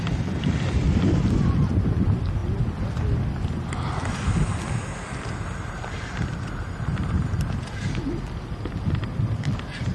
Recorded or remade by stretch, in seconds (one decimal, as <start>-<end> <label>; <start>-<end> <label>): 0.0-9.9 recorded